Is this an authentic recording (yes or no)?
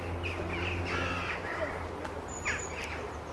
yes